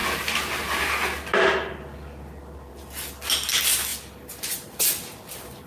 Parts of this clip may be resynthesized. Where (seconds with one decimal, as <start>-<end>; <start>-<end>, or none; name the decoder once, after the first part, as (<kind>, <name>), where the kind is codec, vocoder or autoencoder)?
none